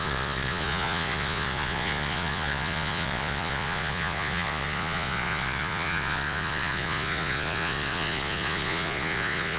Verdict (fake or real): fake